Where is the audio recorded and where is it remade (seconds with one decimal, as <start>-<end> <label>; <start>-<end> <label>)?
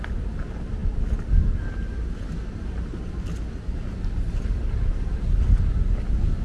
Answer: 0.0-6.4 recorded